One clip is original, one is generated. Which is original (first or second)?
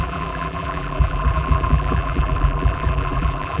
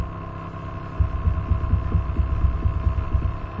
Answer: second